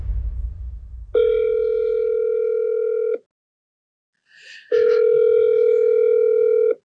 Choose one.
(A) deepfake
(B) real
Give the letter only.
B